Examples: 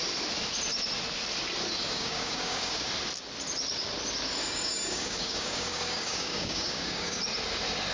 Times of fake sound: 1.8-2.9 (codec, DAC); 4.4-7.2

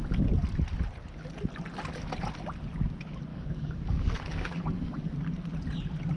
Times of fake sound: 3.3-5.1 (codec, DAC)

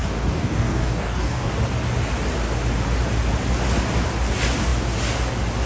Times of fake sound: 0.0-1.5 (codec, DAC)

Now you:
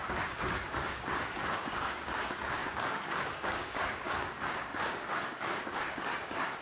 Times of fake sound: 0.0-6.6 (codec, DAC)